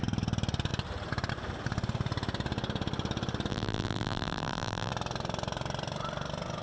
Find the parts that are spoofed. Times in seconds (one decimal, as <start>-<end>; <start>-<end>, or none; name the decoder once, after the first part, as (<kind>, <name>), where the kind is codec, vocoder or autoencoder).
3.5-4.9 (vocoder, BigVGAN v2)